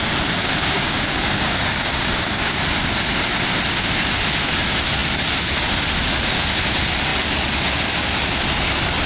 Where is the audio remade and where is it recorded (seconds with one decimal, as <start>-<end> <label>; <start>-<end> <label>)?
0.0-0.4 recorded; 0.4-2.6 remade; 2.6-9.1 recorded